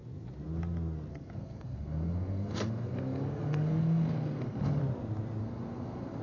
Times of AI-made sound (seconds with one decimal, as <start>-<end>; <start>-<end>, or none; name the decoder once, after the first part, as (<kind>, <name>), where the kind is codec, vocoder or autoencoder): 1.1-4.8 (codec, SNAC); 5.4-6.2